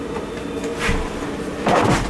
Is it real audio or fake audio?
real